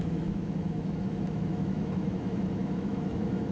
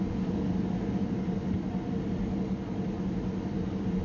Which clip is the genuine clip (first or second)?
second